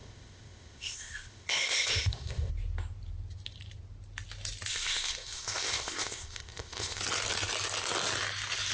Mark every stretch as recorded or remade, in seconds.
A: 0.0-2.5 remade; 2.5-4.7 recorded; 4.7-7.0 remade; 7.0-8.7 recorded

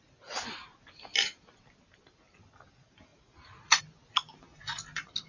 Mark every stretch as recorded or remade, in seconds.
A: 0.0-3.1 recorded; 3.1-3.8 remade; 3.8-5.3 recorded

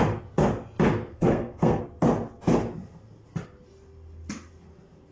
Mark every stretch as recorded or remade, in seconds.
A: 0.0-1.1 recorded; 1.1-1.8 remade; 1.8-5.1 recorded

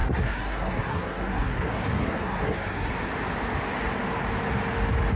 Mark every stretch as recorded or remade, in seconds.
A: 0.0-3.1 remade; 3.1-5.2 recorded

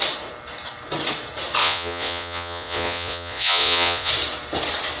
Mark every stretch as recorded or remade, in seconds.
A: 0.0-1.6 recorded; 1.6-4.1 remade; 4.1-5.0 recorded